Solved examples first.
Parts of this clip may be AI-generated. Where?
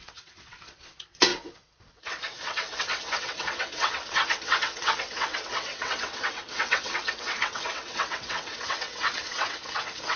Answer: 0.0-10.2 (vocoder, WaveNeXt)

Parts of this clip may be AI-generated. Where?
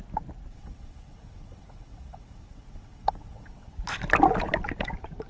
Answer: 0.5-3.7 (vocoder, WaveNeXt)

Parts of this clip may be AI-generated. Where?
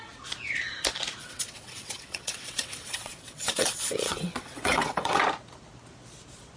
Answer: 1.2-5.2 (vocoder, WaveNeXt)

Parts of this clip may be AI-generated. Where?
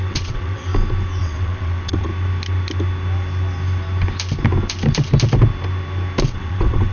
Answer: 0.0-0.7 (vocoder, WaveNeXt); 1.2-2.1; 6.2-6.9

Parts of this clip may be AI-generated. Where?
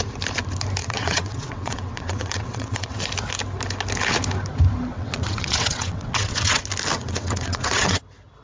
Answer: 0.8-3.0 (vocoder, WaveNeXt); 4.9-6.6; 7.0-8.0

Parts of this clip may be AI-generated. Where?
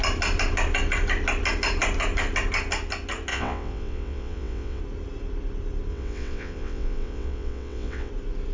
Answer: 3.3-4.8 (vocoder, WaveNeXt); 5.9-8.1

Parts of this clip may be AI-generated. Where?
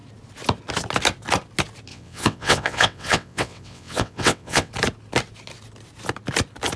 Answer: 1.9-4.7 (vocoder, WaveNeXt)